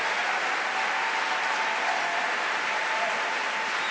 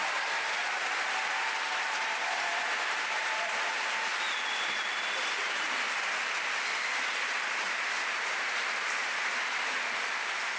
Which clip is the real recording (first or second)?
first